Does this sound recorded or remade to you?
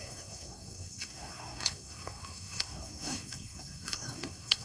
remade